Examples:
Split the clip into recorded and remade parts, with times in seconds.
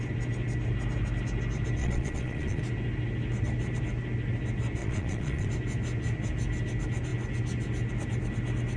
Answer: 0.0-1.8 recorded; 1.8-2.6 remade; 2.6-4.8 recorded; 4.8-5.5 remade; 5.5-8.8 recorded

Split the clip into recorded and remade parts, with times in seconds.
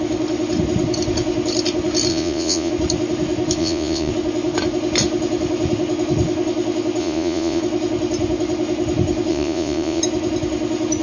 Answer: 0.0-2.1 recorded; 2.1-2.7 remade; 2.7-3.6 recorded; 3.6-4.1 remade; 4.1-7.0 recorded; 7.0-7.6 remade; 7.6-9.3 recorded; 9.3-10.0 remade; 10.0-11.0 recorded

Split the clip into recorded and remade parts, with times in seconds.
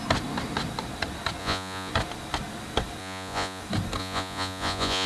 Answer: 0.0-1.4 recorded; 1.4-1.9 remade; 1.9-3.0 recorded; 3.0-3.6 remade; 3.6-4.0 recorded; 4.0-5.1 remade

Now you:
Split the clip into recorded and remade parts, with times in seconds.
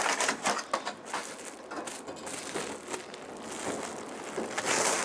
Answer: 0.0-5.0 recorded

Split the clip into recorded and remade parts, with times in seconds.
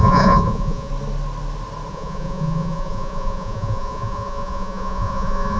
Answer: 0.0-0.9 remade; 0.9-1.9 recorded; 1.9-5.6 remade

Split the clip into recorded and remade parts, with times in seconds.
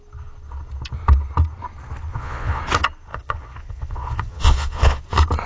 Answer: 0.0-2.1 recorded; 2.1-2.6 remade; 2.6-3.1 recorded; 3.1-5.0 remade; 5.0-5.5 recorded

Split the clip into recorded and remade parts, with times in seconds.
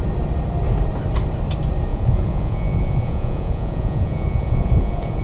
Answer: 0.0-1.9 recorded; 1.9-5.2 remade